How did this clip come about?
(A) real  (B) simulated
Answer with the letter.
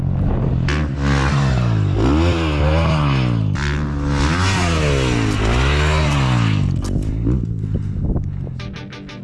A